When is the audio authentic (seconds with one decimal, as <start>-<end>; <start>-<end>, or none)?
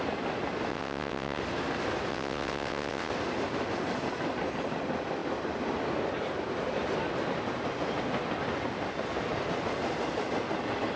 0.0-0.7; 1.4-2.1; 3.1-11.0